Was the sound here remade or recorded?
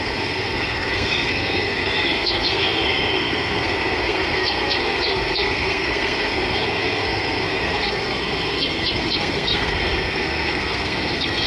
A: remade